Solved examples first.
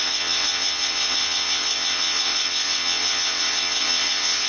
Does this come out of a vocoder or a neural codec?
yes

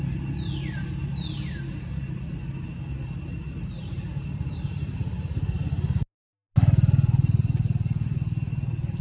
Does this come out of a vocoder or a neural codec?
no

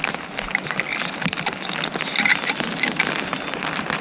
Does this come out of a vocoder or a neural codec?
no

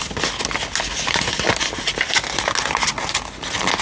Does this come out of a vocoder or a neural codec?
no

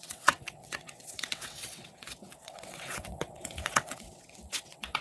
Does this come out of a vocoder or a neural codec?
yes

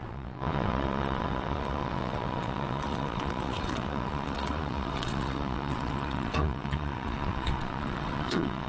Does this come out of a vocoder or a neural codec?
yes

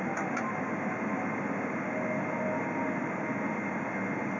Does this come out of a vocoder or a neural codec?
no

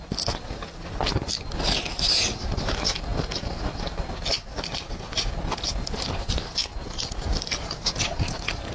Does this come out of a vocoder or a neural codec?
no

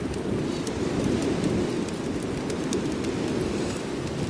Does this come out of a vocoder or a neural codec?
no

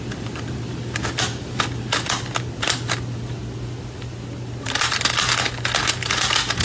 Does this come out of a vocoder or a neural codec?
no